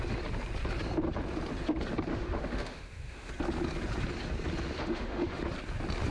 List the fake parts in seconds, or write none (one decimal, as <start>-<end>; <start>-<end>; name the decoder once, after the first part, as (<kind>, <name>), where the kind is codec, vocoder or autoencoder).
2.1-3.3 (autoencoder, DAC-VAE); 4.8-5.4

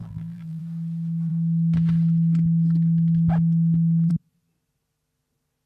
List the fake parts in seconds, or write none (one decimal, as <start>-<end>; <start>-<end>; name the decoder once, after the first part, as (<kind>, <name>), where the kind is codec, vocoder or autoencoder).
0.0-0.6 (vocoder, BigVGAN v2)

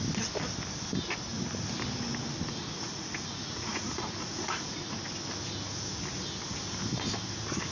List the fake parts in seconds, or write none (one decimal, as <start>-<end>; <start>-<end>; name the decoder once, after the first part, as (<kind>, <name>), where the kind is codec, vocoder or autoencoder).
2.6-5.0 (vocoder, Vocos)

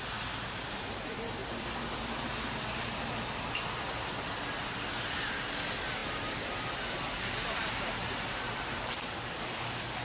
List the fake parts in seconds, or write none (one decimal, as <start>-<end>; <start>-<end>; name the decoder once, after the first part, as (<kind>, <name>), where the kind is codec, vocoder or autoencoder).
none

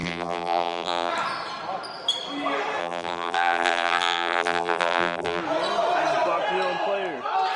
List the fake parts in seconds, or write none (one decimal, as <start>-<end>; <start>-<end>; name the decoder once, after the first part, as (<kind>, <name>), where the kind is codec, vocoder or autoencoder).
0.0-1.1 (vocoder, BigVGAN v2); 2.8-5.4

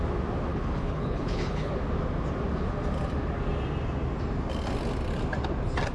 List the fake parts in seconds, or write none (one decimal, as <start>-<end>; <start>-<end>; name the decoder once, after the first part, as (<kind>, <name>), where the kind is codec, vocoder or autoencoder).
0.5-1.7 (codec, HILCodec)

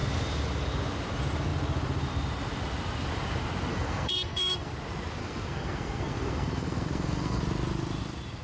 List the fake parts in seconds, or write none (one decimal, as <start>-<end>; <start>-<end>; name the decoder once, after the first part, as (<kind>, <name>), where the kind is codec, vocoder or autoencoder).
3.7-4.7 (codec, SNAC); 5.2-7.4